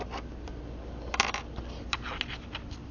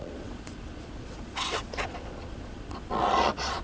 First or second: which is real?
first